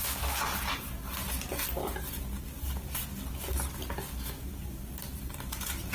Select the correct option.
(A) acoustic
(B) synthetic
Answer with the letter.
A